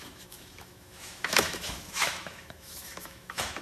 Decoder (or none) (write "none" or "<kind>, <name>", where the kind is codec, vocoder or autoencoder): autoencoder, DAC-VAE